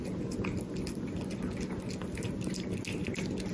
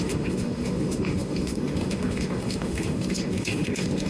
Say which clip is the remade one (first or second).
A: second